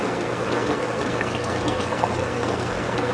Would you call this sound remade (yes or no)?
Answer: yes